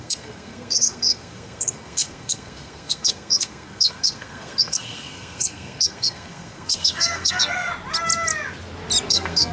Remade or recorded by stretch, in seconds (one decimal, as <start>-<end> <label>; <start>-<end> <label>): 0.0-7.7 remade; 7.7-9.1 recorded; 9.1-9.5 remade